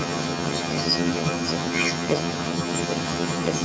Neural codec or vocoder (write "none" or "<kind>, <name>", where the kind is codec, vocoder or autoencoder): vocoder, HiFi-GAN